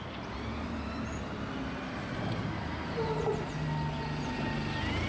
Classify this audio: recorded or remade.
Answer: recorded